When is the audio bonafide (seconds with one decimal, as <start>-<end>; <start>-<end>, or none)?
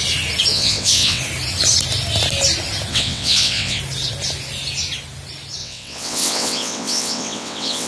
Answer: 0.0-0.5; 1.2-2.9; 3.8-5.6